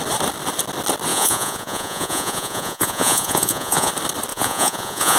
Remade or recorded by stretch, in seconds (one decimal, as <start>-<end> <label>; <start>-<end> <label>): 0.0-1.1 recorded; 1.1-3.9 remade; 3.9-4.3 recorded; 4.3-5.2 remade